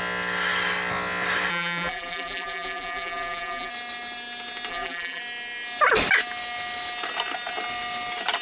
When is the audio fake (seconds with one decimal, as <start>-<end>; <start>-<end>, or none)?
1.5-3.7; 4.7-5.2